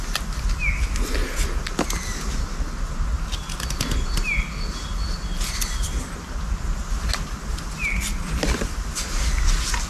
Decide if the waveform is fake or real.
real